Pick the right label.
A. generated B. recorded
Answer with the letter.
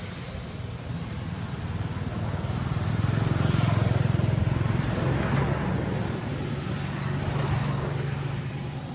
B